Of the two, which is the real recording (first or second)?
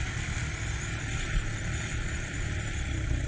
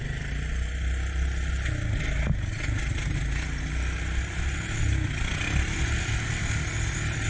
second